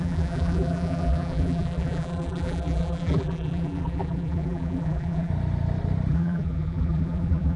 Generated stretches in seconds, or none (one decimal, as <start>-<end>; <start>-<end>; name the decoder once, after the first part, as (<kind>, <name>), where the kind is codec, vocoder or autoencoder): 0.0-5.3 (vocoder, BigVGAN v2); 6.1-7.6